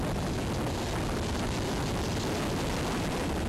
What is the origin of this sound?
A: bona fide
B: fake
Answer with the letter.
A